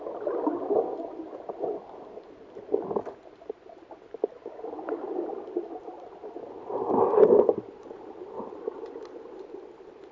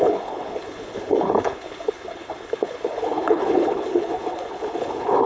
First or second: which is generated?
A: second